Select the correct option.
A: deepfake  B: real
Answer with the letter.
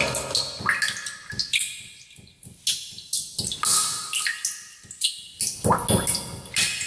B